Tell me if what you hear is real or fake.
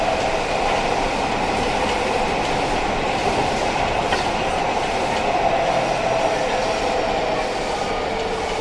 real